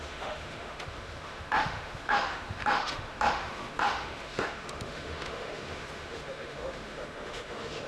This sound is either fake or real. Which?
fake